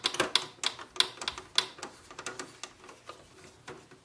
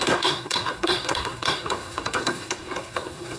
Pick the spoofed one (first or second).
second